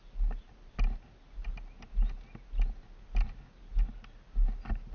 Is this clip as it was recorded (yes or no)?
yes